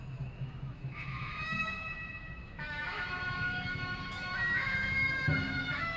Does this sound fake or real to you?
fake